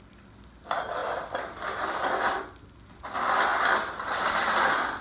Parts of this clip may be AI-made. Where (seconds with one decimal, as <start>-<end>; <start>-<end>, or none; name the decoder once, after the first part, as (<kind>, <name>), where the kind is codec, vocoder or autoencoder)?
none